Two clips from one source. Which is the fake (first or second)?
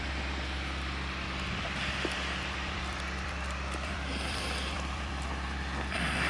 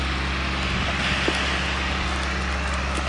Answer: first